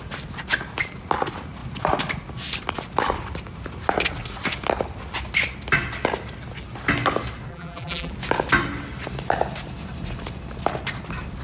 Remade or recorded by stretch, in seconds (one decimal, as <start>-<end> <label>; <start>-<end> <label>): 0.0-7.5 recorded; 7.5-8.1 remade; 8.1-11.4 recorded